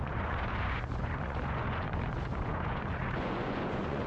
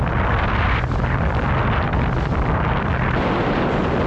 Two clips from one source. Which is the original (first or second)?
second